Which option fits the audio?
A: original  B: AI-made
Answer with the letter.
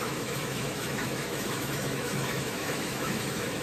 B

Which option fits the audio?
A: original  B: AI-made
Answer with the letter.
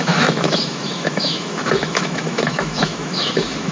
B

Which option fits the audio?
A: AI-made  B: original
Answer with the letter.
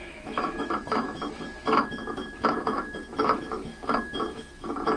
A